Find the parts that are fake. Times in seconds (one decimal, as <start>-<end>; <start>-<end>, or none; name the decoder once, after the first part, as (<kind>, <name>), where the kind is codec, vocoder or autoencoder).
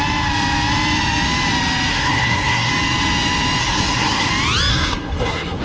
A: 1.9-2.7 (codec, SNAC); 3.6-4.3; 4.7-5.6